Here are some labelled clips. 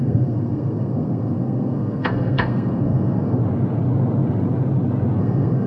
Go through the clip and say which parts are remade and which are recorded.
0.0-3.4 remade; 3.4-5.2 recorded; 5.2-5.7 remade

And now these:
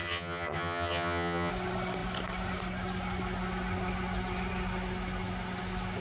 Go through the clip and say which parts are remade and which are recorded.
0.0-1.5 remade; 1.5-6.0 recorded

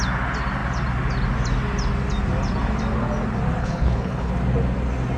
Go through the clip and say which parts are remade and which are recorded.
0.0-3.6 recorded; 3.6-4.3 remade; 4.3-5.2 recorded

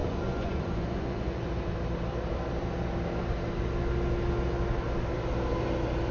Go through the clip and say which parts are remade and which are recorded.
0.0-1.4 remade; 1.4-6.1 recorded

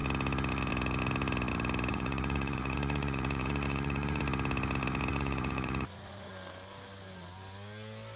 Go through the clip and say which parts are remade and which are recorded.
0.0-1.9 recorded; 1.9-4.2 remade; 4.2-5.1 recorded; 5.1-6.3 remade; 6.3-8.2 recorded

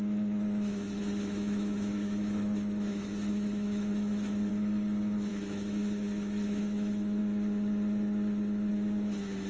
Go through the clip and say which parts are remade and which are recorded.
0.0-4.5 remade; 4.5-5.3 recorded; 5.3-7.2 remade; 7.2-8.7 recorded; 8.7-9.5 remade

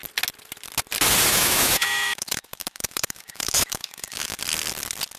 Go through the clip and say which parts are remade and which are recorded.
0.0-1.3 recorded; 1.3-4.4 remade; 4.4-5.2 recorded

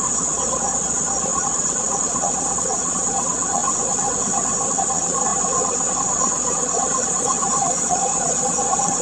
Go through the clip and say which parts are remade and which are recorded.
0.0-3.6 remade; 3.6-4.7 recorded; 4.7-9.0 remade